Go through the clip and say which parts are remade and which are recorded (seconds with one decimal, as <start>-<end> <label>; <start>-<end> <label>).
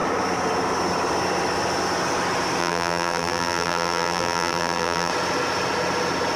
0.0-2.6 recorded; 2.6-5.1 remade; 5.1-6.4 recorded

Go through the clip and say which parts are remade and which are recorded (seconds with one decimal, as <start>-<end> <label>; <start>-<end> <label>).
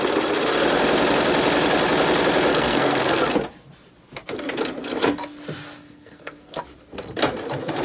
0.0-2.5 recorded; 2.5-3.2 remade; 3.2-5.8 recorded; 5.8-6.6 remade; 6.6-7.8 recorded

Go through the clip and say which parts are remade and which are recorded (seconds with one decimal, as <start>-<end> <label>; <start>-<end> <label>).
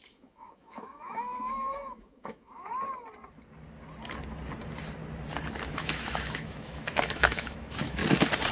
0.0-2.7 remade; 2.7-5.7 recorded; 5.7-8.0 remade; 8.0-8.5 recorded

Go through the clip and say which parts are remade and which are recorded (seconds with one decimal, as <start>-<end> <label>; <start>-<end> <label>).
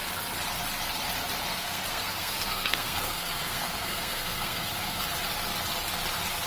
0.0-1.5 recorded; 1.5-5.0 remade; 5.0-6.5 recorded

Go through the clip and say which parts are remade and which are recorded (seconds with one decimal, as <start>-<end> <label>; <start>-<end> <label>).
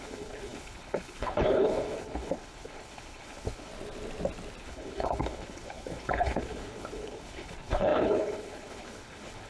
0.0-3.7 remade; 3.7-4.6 recorded; 4.6-9.5 remade